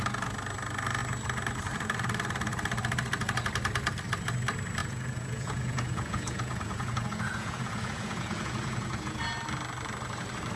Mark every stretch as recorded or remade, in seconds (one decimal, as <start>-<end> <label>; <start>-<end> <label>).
0.0-4.8 recorded; 4.8-9.2 remade; 9.2-10.6 recorded